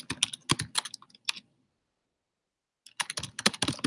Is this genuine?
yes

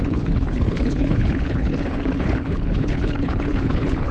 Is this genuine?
no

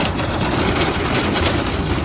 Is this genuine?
yes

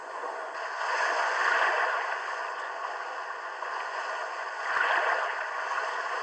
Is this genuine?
no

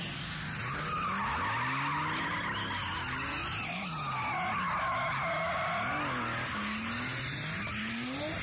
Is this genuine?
yes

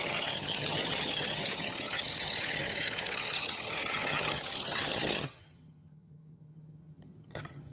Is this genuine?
no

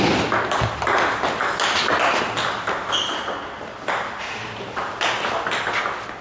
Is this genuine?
yes